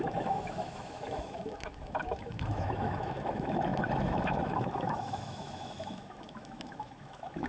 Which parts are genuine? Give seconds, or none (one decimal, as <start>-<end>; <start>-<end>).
none